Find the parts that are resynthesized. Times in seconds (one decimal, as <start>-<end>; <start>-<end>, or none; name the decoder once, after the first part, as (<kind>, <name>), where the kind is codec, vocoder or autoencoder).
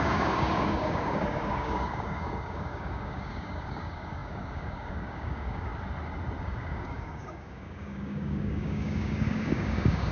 0.0-5.7 (codec, DAC); 6.4-10.1